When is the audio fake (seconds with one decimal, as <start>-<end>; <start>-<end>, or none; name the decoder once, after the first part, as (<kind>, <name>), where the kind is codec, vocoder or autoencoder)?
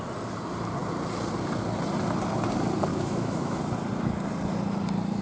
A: 2.9-3.6 (autoencoder, DAC-VAE)